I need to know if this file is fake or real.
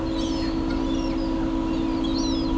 real